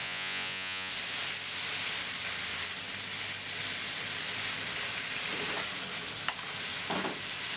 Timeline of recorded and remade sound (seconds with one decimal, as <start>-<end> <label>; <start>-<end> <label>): 0.0-0.9 remade; 0.9-7.6 recorded

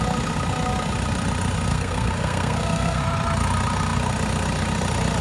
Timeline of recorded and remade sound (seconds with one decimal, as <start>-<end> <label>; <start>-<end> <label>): 0.0-1.7 recorded; 1.7-3.0 remade; 3.0-5.2 recorded

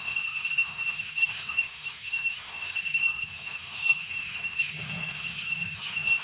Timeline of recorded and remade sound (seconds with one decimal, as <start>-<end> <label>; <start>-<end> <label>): 0.0-6.2 remade

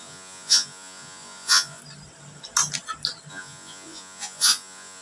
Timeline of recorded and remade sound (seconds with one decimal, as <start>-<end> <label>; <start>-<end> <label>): 0.0-1.8 remade; 1.8-3.3 recorded; 3.3-5.0 remade

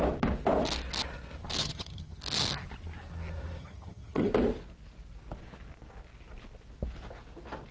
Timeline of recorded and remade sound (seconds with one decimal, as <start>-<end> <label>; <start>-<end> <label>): 0.0-1.6 recorded; 1.6-2.2 remade; 2.2-3.6 recorded; 3.6-4.3 remade; 4.3-7.7 recorded